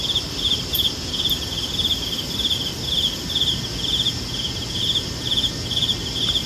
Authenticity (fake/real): real